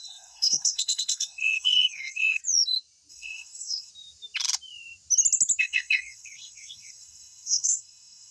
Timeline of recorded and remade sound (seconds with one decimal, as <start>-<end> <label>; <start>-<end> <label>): 0.0-2.4 remade; 2.4-3.1 recorded; 3.1-3.9 remade; 3.9-5.6 recorded; 5.6-8.3 remade